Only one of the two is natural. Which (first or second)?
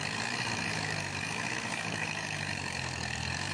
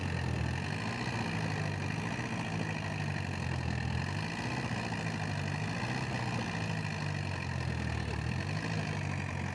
second